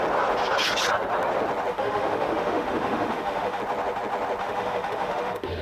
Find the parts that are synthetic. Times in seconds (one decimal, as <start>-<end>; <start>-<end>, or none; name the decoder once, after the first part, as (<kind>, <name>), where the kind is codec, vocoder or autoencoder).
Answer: 1.7-3.6 (autoencoder, DAC-VAE); 4.4-5.6